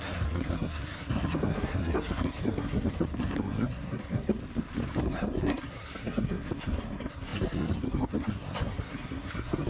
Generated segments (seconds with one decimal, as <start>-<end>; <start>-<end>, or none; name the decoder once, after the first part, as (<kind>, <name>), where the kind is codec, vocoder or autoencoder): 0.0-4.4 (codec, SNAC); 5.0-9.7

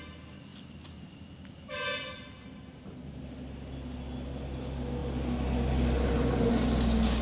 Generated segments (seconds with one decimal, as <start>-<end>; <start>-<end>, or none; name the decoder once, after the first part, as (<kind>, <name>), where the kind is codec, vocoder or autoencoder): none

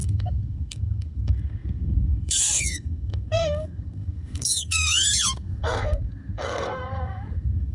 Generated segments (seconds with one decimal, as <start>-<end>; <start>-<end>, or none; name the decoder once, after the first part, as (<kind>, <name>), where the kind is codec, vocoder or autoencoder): 0.0-7.7 (codec, SNAC)

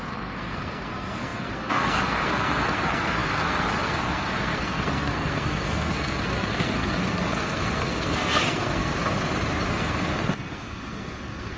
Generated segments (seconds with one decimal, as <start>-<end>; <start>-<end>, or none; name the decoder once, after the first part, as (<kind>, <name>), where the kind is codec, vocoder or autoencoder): 0.0-8.9 (codec, SNAC); 9.7-11.6

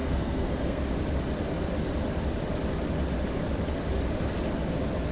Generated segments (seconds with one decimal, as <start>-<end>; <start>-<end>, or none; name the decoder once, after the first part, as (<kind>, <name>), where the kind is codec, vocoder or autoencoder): 0.0-0.8 (codec, SNAC)

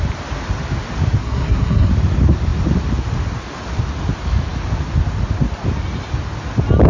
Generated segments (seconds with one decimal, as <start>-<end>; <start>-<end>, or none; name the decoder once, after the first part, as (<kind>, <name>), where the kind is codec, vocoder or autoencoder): 1.2-1.9 (codec, SNAC)

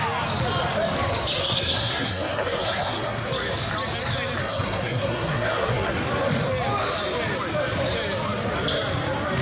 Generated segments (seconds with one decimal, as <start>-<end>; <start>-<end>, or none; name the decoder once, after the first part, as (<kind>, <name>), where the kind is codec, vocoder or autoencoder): 1.4-3.3 (codec, SNAC); 4.4-5.9